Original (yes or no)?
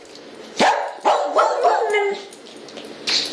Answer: yes